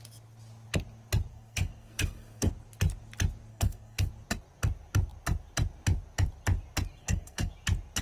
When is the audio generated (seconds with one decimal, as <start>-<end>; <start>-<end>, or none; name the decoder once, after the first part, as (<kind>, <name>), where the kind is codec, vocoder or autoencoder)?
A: 1.3-2.5 (codec, SNAC); 3.5-4.1; 7.0-7.5

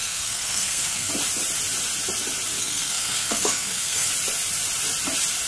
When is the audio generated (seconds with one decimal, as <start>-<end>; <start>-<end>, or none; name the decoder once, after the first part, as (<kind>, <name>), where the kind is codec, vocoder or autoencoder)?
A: 0.0-1.1 (codec, SNAC); 2.6-4.1

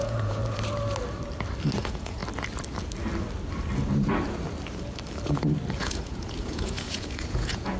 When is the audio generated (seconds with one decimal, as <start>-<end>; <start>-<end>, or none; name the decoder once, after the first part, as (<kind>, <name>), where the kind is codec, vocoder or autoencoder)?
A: 0.0-0.4 (vocoder, Vocos); 1.8-2.2; 5.8-7.8

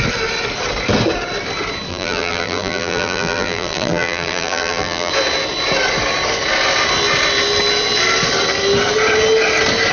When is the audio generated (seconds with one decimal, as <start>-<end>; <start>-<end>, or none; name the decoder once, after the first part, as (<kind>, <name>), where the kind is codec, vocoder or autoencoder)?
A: 1.9-5.1 (vocoder, BigVGAN v2)

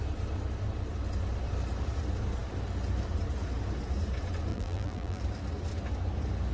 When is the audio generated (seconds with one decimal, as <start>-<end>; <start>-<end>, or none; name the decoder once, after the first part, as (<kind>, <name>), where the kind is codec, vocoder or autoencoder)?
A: 4.5-5.2 (vocoder, BigVGAN v2)

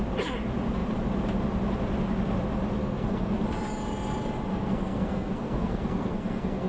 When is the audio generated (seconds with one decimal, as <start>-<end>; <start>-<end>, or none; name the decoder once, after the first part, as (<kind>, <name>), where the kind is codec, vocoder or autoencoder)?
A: 2.8-3.4 (codec, SNAC); 4.5-6.7

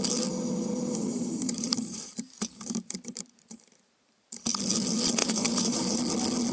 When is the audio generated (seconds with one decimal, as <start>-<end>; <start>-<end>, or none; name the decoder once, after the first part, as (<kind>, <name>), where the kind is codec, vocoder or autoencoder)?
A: 1.1-4.6 (vocoder, BigVGAN v2); 5.2-6.0